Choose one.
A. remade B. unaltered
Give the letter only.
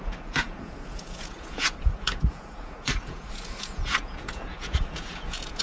A